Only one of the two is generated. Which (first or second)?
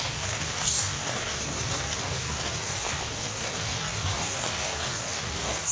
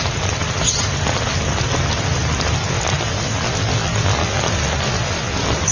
first